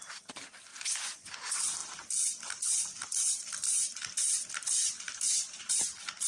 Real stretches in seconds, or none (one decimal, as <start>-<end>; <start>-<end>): 0.0-0.7; 1.4-6.3